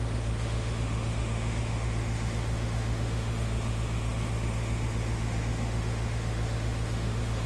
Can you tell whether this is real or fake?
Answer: fake